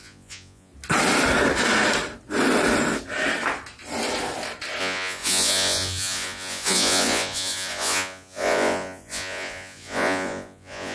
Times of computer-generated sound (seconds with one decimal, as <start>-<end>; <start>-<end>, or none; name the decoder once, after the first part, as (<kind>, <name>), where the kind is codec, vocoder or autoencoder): 0.0-0.7 (vocoder, Vocos); 4.8-10.9